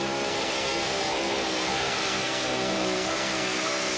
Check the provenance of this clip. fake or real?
fake